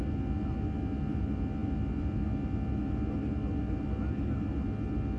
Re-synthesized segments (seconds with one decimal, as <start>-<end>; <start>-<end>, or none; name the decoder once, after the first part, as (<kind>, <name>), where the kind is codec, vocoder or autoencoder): none